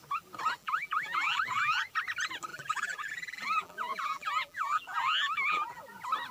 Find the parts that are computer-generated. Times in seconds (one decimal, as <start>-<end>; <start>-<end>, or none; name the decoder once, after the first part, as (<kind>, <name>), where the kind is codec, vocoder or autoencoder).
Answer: 0.6-1.8 (vocoder, BigVGAN v2); 2.5-5.8